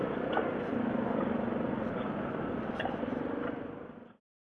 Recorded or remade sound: recorded